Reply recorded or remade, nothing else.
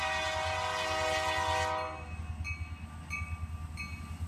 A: recorded